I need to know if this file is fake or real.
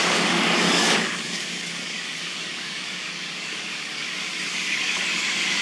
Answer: fake